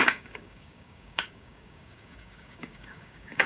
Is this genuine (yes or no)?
no